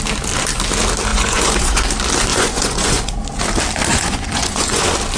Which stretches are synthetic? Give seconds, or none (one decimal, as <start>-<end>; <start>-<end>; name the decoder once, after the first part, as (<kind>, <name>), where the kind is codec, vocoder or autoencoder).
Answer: 1.1-1.9 (vocoder, Vocos); 2.3-3.1; 3.9-4.8